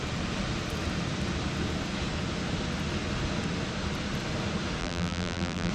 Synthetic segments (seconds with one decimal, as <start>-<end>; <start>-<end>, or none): 4.8-5.7